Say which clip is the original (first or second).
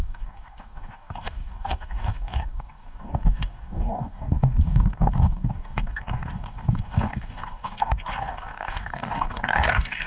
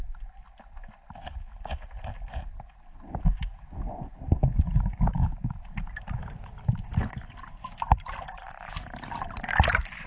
second